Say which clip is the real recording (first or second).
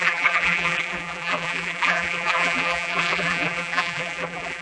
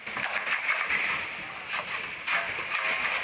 second